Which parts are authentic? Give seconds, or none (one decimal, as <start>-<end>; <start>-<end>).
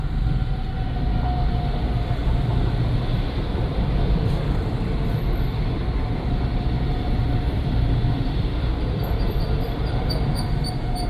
0.0-3.1; 5.2-7.2; 10.1-11.1